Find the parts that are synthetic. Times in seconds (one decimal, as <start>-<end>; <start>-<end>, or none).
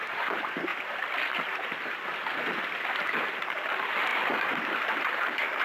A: 0.0-0.7; 2.9-5.6